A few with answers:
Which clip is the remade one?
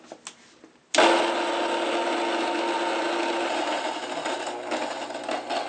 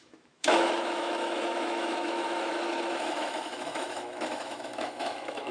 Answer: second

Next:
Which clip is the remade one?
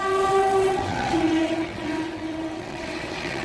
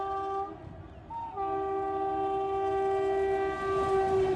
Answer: first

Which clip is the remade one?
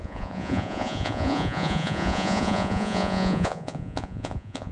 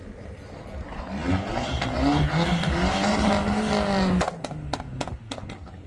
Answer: first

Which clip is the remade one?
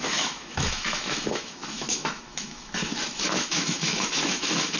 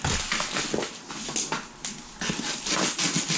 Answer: first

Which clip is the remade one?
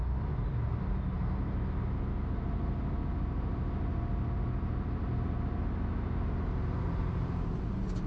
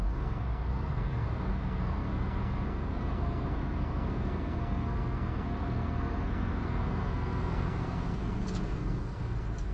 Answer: second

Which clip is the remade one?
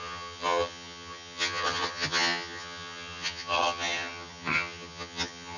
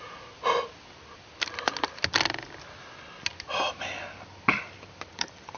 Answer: first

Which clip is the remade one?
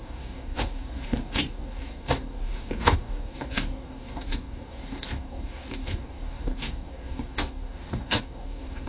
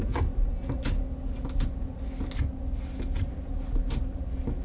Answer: first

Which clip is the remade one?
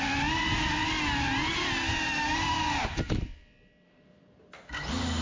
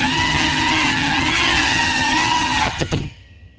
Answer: second